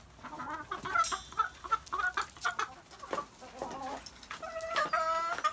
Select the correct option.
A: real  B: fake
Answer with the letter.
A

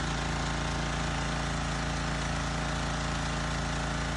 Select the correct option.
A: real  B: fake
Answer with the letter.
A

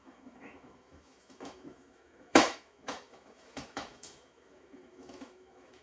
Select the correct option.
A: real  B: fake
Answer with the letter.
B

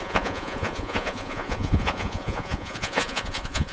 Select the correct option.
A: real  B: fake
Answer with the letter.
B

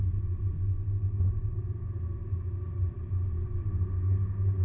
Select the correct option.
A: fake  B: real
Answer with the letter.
B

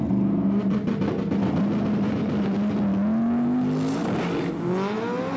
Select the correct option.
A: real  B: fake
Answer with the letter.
A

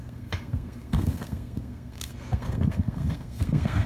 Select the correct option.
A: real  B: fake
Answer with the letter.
B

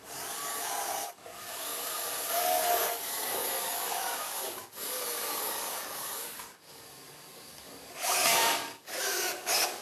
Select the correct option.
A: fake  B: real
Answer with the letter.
A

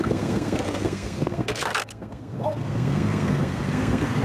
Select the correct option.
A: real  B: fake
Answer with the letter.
B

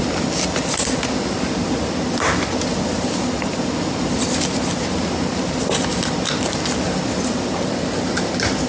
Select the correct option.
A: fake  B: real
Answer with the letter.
B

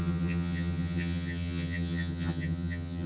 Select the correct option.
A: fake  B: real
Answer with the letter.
A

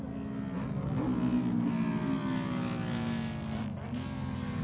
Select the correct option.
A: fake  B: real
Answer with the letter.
B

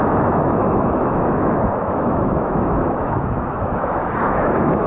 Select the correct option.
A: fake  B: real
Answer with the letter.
A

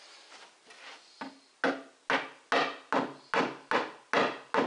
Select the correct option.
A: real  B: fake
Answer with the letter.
A